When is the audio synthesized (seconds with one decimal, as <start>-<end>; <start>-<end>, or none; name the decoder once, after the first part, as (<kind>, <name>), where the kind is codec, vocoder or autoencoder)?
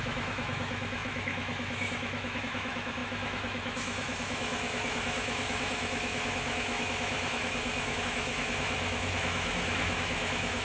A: 0.0-10.6 (autoencoder, DAC-VAE)